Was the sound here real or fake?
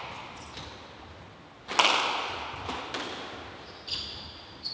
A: real